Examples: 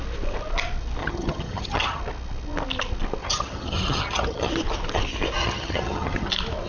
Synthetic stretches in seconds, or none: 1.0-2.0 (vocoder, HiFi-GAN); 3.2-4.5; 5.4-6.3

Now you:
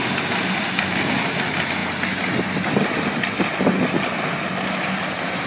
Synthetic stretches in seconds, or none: none

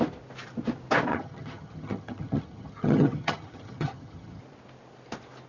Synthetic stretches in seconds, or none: 1.1-4.4 (vocoder, HiFi-GAN)

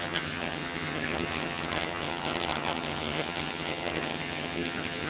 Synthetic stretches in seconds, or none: 0.0-5.1 (vocoder, HiFi-GAN)